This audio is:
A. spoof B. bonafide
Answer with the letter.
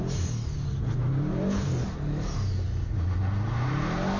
B